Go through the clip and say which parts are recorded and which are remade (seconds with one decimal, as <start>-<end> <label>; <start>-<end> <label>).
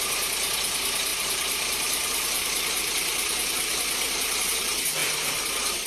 0.0-1.1 recorded; 1.1-4.6 remade; 4.6-5.9 recorded